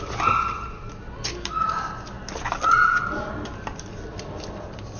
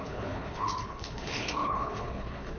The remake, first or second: second